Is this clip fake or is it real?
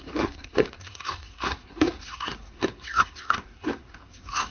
fake